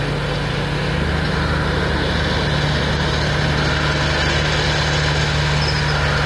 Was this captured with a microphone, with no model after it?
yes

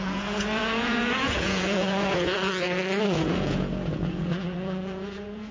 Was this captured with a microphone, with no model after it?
no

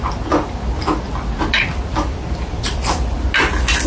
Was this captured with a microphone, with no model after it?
yes